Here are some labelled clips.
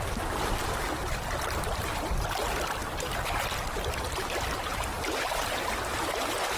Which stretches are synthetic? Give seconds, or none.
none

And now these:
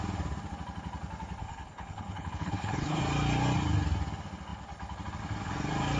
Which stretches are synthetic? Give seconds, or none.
1.4-3.0 (codec, HILCodec)

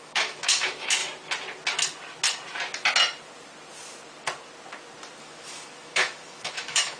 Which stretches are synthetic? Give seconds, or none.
0.0-1.0 (autoencoder, DAC-VAE); 5.2-7.0

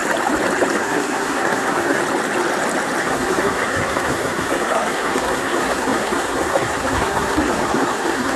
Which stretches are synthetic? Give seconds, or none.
0.8-2.0 (codec, SNAC); 3.0-8.4

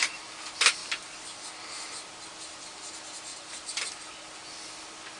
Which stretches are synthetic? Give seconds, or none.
3.3-3.9 (vocoder, BigVGAN v2)

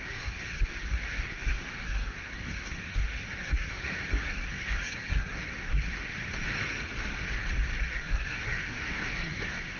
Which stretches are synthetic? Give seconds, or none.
0.0-6.1 (codec, SNAC); 7.8-9.8

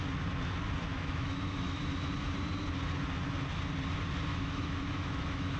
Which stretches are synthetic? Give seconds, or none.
0.9-1.8 (autoencoder, DAC-VAE); 4.3-5.6